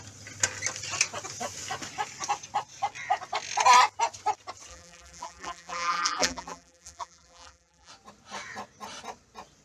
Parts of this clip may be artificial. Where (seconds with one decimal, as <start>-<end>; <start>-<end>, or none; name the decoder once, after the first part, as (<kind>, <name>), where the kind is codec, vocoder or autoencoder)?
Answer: 4.7-7.9 (vocoder, BigVGAN v2)